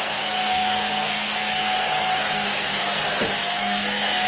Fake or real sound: fake